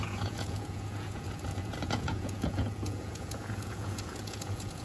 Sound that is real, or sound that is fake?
fake